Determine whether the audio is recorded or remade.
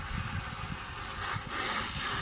recorded